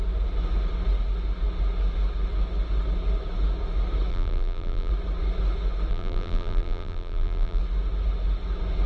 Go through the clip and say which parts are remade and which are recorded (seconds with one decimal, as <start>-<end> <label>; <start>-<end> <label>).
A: 0.0-4.1 recorded; 4.1-4.9 remade; 4.9-5.9 recorded; 5.9-7.6 remade; 7.6-8.9 recorded